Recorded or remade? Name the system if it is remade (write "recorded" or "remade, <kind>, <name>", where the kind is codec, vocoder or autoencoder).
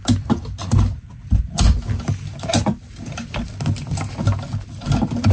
recorded